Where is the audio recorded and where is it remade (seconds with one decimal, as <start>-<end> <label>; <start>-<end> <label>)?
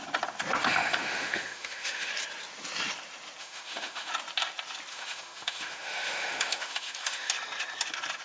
0.0-0.6 recorded; 0.6-2.1 remade; 2.1-3.4 recorded; 3.4-4.1 remade; 4.1-4.9 recorded; 4.9-7.3 remade; 7.3-8.2 recorded